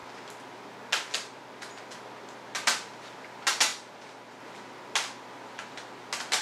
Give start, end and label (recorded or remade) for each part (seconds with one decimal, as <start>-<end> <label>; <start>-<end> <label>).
0.0-6.4 recorded